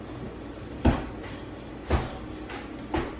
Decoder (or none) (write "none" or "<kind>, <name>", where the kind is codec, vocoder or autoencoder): none